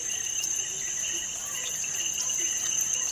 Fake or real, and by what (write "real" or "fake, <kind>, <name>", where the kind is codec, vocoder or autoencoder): real